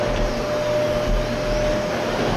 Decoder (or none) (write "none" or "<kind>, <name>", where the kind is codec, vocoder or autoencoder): none